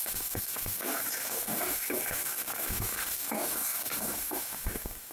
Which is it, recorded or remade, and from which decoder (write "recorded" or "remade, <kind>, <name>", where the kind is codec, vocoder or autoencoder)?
remade, codec, DAC